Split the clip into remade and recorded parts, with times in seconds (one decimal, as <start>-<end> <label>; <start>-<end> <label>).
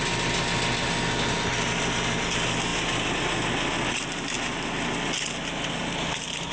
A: 0.0-6.5 recorded